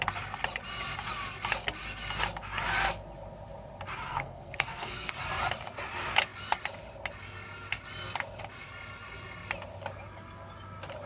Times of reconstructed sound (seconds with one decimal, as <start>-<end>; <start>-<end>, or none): 4.1-5.1